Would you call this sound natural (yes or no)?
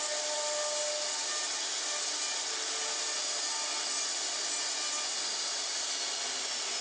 yes